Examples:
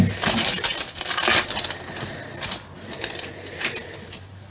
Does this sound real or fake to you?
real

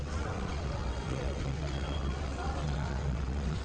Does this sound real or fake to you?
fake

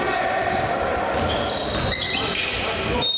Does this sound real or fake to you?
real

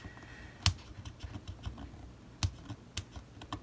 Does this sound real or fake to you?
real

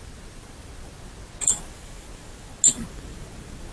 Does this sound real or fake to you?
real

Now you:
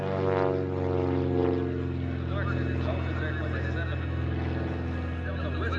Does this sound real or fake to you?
real